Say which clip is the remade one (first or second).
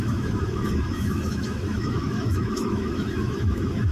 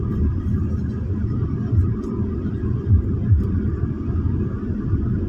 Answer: first